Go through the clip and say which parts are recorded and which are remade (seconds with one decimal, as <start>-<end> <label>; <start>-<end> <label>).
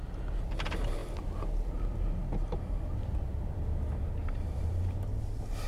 0.0-4.2 recorded; 4.2-5.7 remade